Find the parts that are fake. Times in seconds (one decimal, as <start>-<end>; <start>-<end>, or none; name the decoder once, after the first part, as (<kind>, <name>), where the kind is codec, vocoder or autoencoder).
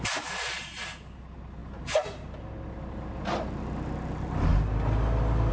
none